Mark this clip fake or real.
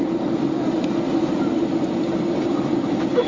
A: real